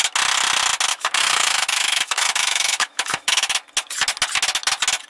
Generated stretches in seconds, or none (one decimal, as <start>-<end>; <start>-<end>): 0.9-3.5